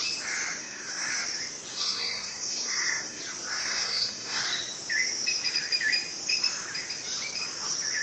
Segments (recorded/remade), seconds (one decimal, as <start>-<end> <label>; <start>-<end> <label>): 0.0-0.6 recorded; 0.6-1.1 remade; 1.1-1.7 recorded; 1.7-3.2 remade; 3.2-3.6 recorded; 3.6-4.4 remade; 4.4-8.0 recorded